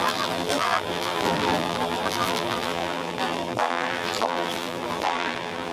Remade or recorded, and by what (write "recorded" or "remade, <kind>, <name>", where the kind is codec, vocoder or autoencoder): remade, vocoder, BigVGAN v2